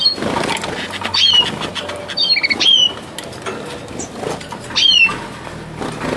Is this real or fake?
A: real